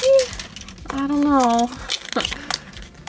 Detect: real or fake real